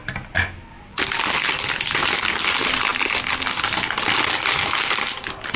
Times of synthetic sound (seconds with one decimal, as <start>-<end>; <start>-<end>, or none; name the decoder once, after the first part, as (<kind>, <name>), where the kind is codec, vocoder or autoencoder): none